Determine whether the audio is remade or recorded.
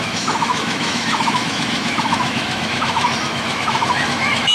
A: remade